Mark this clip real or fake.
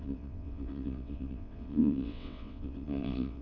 fake